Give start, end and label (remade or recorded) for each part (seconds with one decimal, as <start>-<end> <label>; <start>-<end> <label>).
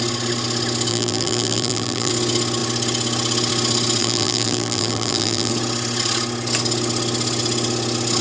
0.0-0.9 recorded; 0.9-2.1 remade; 2.1-4.0 recorded; 4.0-5.5 remade; 5.5-8.2 recorded